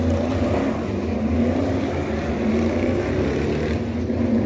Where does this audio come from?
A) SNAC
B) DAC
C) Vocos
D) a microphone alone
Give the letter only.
D